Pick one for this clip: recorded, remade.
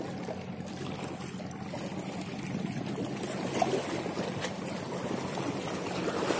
recorded